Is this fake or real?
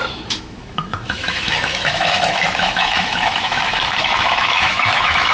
fake